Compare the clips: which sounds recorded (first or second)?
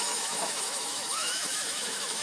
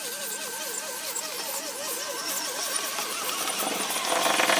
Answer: second